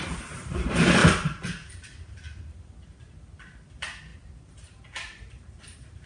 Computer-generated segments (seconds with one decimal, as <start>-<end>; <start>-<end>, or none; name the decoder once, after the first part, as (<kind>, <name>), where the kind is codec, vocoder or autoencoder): 4.1-6.1 (vocoder, BigVGAN v2)